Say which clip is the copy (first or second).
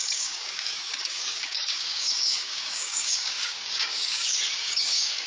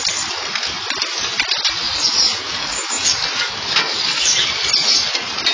first